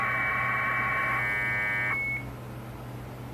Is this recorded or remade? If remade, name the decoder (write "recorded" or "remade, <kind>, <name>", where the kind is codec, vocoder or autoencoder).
recorded